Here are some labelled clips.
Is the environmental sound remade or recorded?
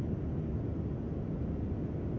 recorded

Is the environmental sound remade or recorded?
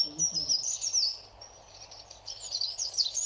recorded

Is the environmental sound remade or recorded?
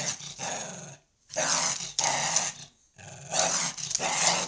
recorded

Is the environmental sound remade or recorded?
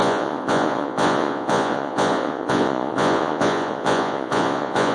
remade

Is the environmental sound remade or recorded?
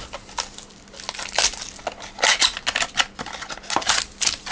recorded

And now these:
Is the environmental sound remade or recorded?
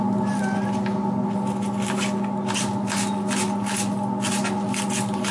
recorded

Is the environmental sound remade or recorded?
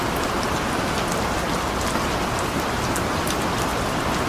recorded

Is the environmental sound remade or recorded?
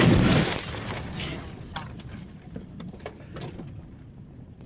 recorded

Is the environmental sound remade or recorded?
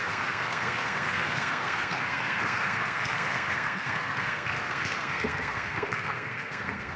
remade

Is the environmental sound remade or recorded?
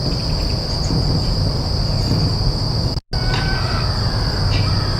recorded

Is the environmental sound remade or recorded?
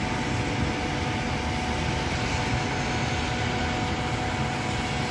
recorded